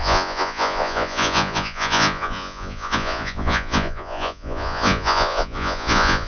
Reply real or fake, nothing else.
fake